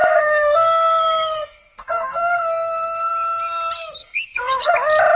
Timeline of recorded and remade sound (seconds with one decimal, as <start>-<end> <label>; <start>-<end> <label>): 0.0-3.1 remade; 3.1-4.0 recorded; 4.0-4.7 remade; 4.7-5.2 recorded